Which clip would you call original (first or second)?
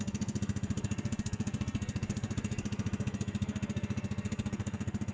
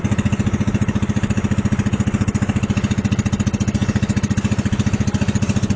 second